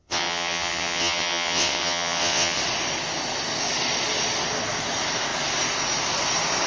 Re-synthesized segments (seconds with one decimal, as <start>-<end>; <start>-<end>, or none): 0.0-2.6